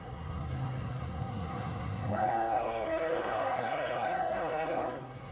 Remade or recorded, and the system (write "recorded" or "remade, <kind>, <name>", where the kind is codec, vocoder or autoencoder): remade, codec, SNAC